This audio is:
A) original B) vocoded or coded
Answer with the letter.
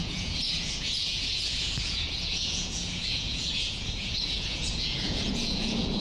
B